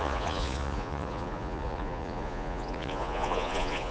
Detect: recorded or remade remade